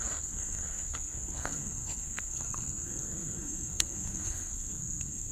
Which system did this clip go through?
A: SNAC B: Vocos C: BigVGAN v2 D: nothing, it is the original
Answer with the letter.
A